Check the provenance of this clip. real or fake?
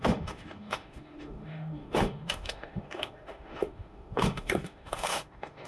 fake